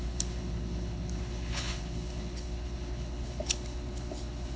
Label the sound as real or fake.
fake